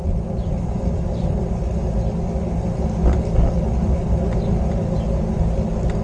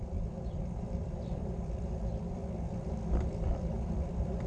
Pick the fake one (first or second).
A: second